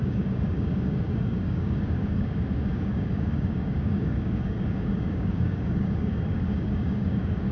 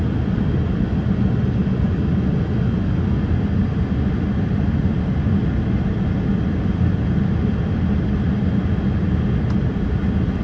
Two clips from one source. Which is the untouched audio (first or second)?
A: second